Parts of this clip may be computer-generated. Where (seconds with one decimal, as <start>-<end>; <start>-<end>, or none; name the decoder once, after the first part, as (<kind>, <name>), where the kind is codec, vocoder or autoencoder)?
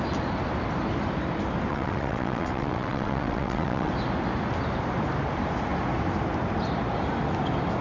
1.7-3.9 (vocoder, WaveNeXt)